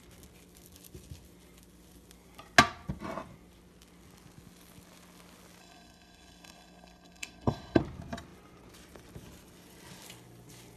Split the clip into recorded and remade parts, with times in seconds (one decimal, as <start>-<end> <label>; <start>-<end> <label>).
0.0-5.6 recorded; 5.6-7.8 remade; 7.8-10.8 recorded